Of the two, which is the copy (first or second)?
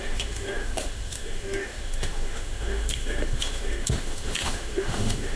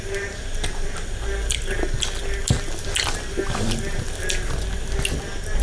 first